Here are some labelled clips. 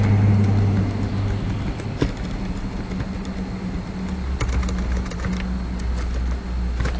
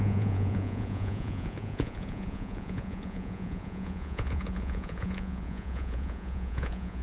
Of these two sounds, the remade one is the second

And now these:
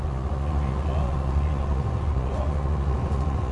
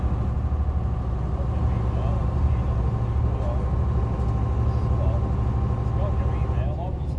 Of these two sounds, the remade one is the first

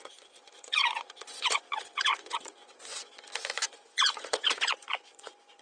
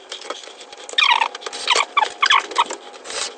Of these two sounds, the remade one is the first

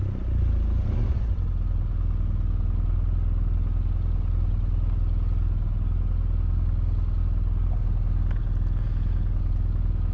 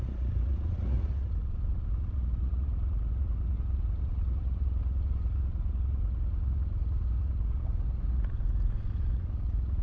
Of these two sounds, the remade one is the second